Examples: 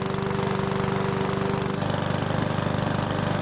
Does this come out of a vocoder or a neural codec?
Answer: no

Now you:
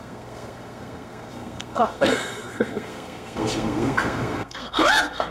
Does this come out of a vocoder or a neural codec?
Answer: yes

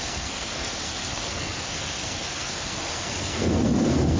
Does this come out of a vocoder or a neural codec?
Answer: yes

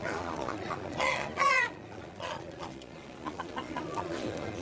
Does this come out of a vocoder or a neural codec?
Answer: yes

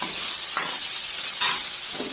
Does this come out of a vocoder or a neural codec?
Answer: yes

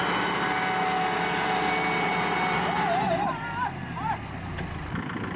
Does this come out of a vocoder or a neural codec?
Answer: no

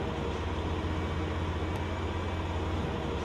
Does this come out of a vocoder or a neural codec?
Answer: no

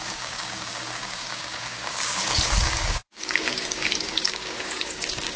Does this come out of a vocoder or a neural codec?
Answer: yes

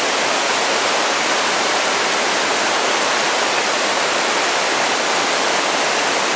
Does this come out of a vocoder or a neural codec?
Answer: no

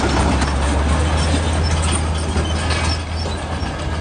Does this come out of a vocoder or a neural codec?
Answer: no